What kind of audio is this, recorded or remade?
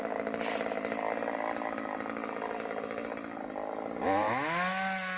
recorded